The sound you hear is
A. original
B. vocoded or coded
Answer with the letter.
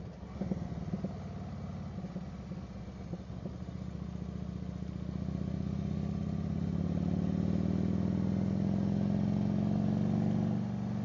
A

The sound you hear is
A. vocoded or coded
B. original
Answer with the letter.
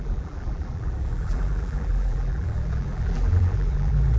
A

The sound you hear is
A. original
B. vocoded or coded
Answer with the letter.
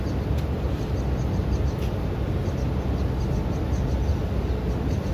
A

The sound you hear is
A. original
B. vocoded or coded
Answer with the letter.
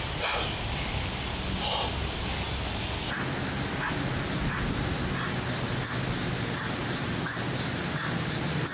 A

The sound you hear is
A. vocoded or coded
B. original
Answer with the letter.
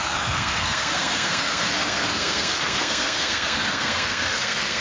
A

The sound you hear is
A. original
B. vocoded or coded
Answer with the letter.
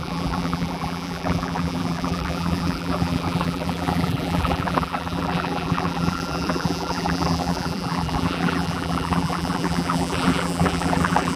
B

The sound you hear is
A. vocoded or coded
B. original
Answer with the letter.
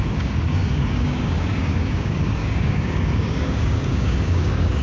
A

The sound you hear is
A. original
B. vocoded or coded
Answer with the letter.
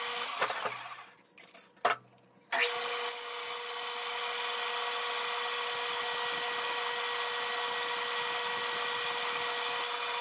A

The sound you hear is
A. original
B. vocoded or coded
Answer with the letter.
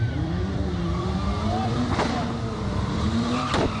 B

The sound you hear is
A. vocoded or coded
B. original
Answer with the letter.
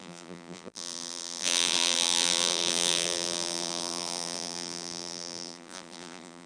A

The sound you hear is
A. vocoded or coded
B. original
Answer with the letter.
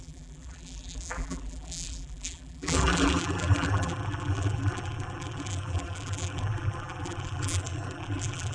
A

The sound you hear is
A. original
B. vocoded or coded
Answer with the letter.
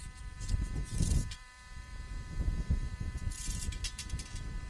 B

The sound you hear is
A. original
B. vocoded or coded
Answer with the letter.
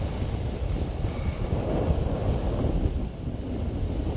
A